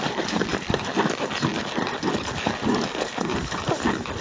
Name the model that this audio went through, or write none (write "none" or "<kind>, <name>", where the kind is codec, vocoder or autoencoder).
vocoder, BigVGAN v2